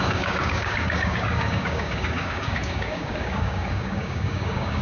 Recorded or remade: remade